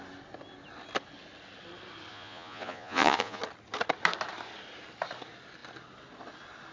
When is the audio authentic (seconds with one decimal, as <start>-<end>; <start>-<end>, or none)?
0.0-2.1; 3.4-6.7